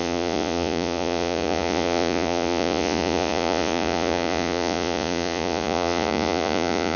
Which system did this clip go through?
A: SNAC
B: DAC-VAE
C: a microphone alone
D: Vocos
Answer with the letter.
D